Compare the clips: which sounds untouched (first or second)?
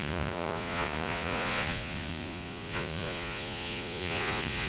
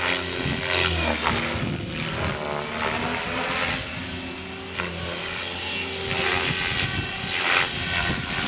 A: second